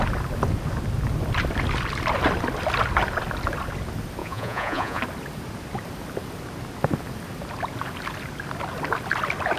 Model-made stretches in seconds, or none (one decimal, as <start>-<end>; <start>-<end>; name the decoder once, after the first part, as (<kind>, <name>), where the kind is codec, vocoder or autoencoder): 4.2-5.0 (vocoder, Vocos)